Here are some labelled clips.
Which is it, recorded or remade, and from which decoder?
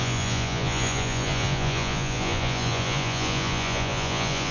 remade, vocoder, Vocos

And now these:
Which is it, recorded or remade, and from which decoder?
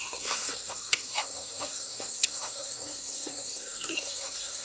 remade, codec, SNAC